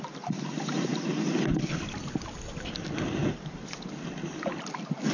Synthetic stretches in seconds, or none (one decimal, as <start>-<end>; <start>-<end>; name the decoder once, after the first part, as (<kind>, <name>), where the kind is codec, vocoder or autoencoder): none